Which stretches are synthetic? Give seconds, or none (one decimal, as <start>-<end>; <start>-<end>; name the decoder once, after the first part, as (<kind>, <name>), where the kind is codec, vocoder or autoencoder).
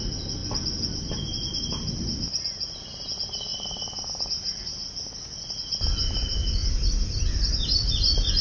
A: none